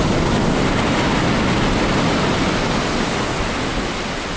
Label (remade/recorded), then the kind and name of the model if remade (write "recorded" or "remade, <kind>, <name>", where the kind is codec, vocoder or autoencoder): recorded